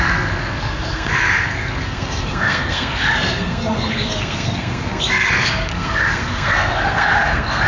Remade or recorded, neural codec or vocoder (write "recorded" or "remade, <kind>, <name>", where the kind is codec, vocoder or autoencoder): remade, codec, SNAC